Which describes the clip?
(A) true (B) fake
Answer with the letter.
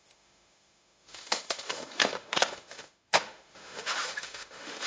B